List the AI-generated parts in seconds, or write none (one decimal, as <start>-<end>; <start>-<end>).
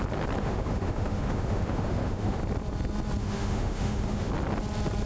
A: 0.4-2.4; 3.2-4.3